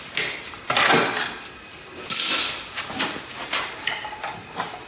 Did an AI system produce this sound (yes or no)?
no